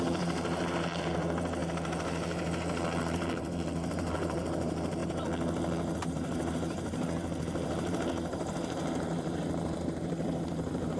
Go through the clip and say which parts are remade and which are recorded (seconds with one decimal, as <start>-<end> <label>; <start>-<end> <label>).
0.0-5.0 remade; 5.0-6.1 recorded; 6.1-11.0 remade